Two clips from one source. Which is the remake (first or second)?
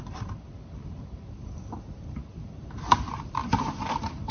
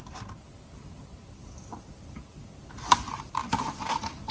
first